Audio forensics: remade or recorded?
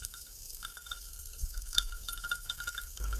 remade